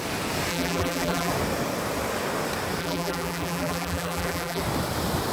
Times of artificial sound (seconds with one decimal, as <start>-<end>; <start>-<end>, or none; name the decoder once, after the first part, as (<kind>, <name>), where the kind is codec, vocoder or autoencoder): 0.5-1.3 (vocoder, BigVGAN v2); 2.8-4.6